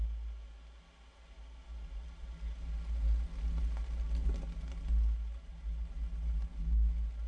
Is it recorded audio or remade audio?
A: recorded